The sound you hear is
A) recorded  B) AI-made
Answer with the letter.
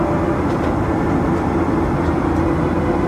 A